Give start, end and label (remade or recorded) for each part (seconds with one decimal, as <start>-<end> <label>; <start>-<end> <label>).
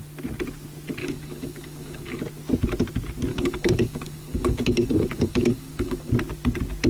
0.0-1.0 recorded; 1.0-2.2 remade; 2.2-3.3 recorded; 3.3-6.1 remade; 6.1-6.9 recorded